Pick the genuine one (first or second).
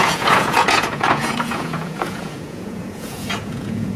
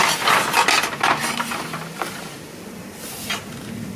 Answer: second